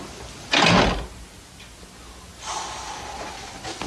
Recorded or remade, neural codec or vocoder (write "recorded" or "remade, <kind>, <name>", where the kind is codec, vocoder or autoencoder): recorded